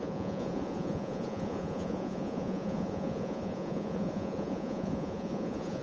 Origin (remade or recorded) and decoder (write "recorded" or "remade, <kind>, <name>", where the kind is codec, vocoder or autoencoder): remade, vocoder, Vocos